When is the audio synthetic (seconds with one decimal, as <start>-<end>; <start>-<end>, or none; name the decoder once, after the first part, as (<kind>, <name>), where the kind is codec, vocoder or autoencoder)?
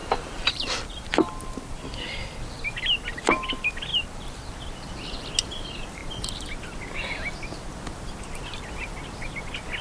0.0-1.1 (vocoder, BigVGAN v2); 3.9-4.5